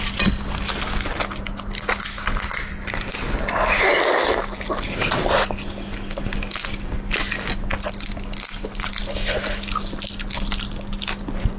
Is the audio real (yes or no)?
yes